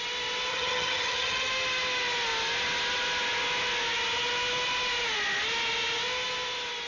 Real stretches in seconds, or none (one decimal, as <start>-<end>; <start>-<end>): 0.0-0.5; 1.5-6.9